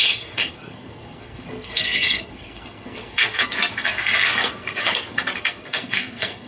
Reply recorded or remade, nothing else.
remade